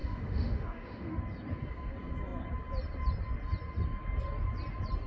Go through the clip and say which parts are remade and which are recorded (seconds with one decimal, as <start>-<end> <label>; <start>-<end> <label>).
0.0-1.2 remade; 1.2-5.1 recorded